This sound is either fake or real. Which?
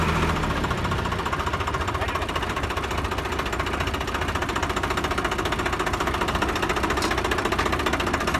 real